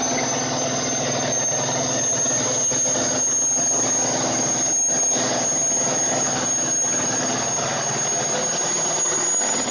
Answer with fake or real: real